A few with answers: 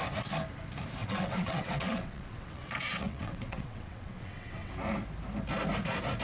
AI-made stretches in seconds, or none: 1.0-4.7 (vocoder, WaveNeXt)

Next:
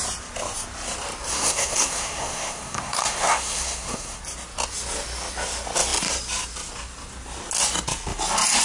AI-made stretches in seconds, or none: 1.3-4.2 (codec, SNAC)

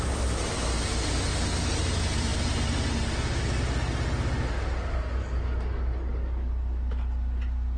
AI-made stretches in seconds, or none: 5.2-6.5 (codec, DAC)

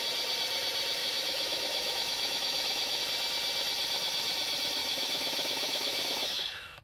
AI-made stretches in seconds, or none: 1.0-3.0 (autoencoder, DAC-VAE); 4.8-6.8

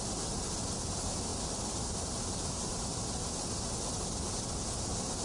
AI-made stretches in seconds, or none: none

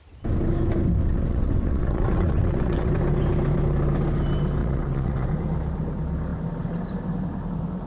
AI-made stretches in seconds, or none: 1.0-2.9 (vocoder, WaveNeXt); 4.6-5.3